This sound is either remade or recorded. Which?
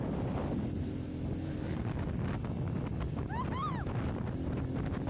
recorded